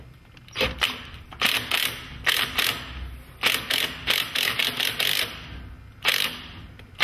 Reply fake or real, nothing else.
real